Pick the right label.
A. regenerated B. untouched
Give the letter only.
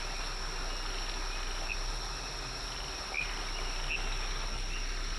B